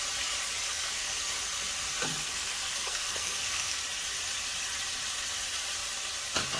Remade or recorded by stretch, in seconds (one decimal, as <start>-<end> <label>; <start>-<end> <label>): 0.0-0.7 recorded; 0.7-1.3 remade; 1.3-2.1 recorded; 2.1-3.8 remade; 3.8-6.6 recorded